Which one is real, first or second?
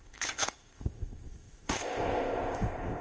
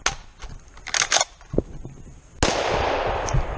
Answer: second